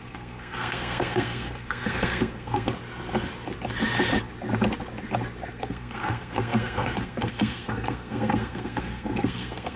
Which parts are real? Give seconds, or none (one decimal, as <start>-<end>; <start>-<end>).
2.7-5.5